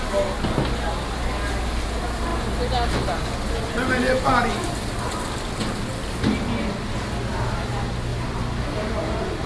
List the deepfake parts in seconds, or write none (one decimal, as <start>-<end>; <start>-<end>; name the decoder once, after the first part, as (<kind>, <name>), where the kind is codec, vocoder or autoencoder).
none